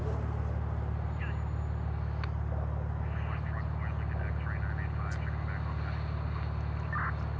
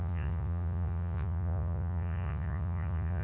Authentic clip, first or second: first